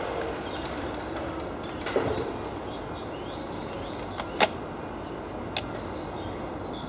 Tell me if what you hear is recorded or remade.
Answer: recorded